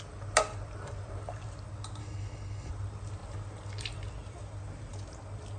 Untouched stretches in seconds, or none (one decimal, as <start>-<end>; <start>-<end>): 0.0-2.0; 2.7-5.6